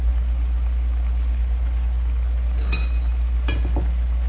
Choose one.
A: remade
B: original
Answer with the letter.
B